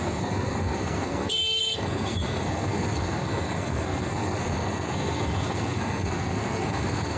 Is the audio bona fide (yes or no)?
no